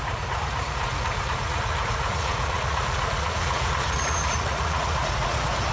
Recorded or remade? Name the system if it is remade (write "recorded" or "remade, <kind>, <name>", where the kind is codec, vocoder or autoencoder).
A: remade, vocoder, Vocos